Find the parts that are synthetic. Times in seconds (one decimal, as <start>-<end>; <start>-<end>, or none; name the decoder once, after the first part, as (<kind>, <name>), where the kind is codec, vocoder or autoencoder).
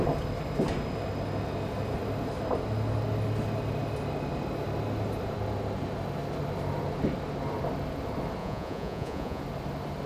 8.4-9.4 (vocoder, Vocos)